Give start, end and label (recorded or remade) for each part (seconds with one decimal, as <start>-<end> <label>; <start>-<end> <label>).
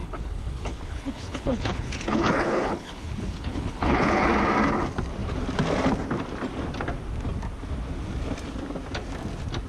0.0-4.3 remade; 4.3-9.7 recorded